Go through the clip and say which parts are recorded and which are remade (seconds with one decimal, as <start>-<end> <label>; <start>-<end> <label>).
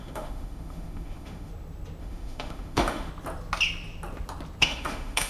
0.0-1.5 remade; 1.5-2.0 recorded; 2.0-3.1 remade; 3.1-4.6 recorded; 4.6-5.3 remade